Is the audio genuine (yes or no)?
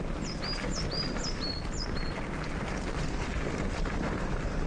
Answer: yes